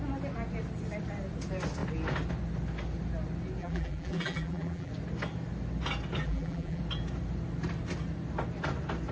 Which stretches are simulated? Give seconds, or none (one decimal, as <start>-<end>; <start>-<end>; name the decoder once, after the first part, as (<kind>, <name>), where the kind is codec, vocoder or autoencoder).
3.6-4.9 (vocoder, BigVGAN v2); 6.2-6.8